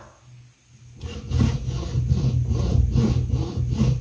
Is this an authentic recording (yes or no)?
yes